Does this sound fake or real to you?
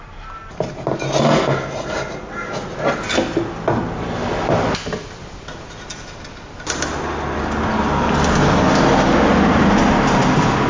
real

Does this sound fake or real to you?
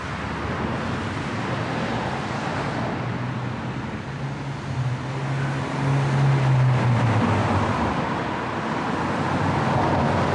real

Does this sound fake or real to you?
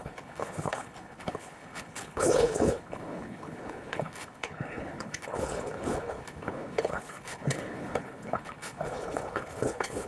fake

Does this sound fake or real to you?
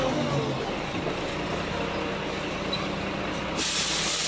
real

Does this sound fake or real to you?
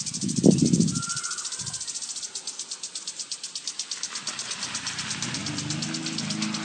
real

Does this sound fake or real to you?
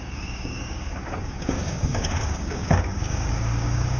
fake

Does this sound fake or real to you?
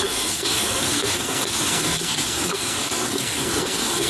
fake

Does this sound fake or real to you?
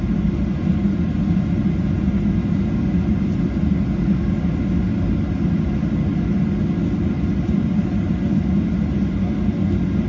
real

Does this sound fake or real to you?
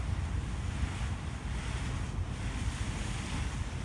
real